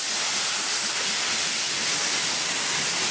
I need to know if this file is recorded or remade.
recorded